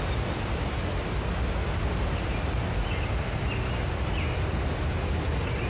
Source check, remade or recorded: recorded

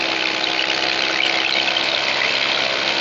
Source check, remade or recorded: recorded